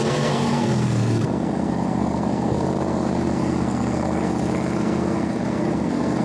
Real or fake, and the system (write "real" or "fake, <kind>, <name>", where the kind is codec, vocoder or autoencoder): fake, codec, SNAC